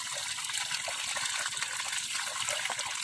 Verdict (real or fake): real